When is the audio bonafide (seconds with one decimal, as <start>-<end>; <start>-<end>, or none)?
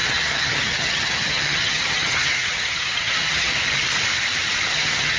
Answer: 3.5-4.7